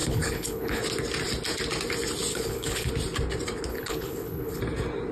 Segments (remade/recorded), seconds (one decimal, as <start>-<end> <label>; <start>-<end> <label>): 0.0-0.8 remade; 0.8-2.3 recorded; 2.3-2.9 remade; 2.9-3.7 recorded; 3.7-4.6 remade; 4.6-5.1 recorded